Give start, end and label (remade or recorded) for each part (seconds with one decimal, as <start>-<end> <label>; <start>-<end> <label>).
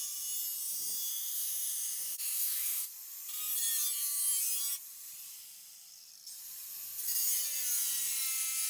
0.0-1.1 recorded; 1.1-2.9 remade; 2.9-8.7 recorded